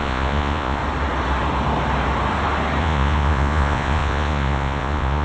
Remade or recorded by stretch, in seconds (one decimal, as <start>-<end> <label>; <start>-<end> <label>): 0.0-0.8 remade; 0.8-2.8 recorded; 2.8-5.2 remade